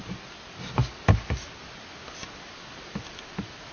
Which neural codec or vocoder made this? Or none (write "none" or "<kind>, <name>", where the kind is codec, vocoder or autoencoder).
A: none